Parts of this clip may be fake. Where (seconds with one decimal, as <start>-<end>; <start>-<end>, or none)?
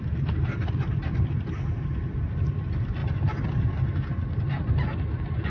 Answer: none